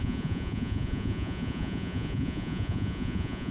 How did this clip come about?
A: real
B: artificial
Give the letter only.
B